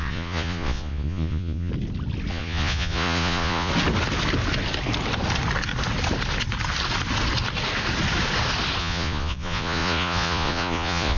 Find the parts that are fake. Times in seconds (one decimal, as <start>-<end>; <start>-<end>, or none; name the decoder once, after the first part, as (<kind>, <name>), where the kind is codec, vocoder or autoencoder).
0.0-1.7 (vocoder, Vocos); 2.3-3.7; 8.8-11.2